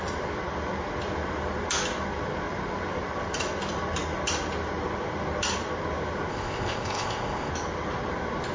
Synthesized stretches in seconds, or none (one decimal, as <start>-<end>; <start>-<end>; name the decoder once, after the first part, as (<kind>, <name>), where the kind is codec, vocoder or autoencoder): 6.3-7.5 (codec, ZipCodec)